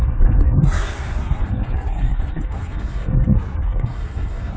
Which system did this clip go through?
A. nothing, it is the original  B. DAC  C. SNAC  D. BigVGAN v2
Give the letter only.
C